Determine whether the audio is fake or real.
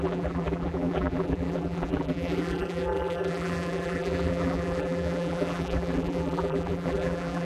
fake